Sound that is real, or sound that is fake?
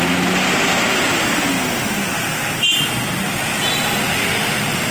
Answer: real